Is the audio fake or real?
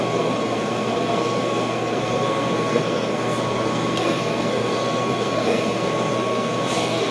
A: fake